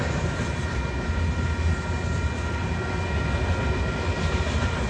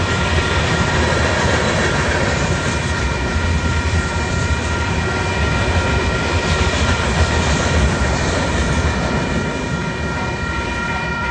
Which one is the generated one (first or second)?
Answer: second